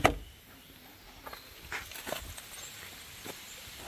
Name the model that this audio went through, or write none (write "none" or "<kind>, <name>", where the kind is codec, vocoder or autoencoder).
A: none